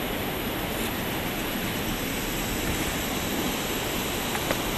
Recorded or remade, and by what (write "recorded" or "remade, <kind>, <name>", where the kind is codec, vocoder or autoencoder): recorded